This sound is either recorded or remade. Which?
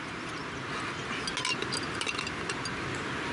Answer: recorded